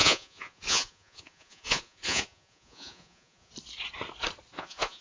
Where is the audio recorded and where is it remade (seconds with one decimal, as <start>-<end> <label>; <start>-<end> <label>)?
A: 0.0-3.5 remade; 3.5-4.5 recorded; 4.5-5.0 remade